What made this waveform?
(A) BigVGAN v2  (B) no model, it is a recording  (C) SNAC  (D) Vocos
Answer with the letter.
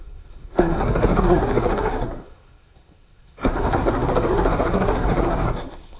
C